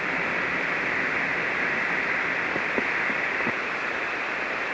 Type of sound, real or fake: real